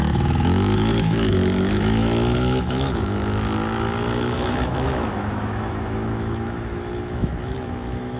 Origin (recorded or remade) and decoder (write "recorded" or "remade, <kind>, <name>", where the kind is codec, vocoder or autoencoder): remade, autoencoder, DAC-VAE